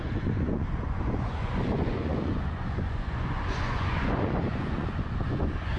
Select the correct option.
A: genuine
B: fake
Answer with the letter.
B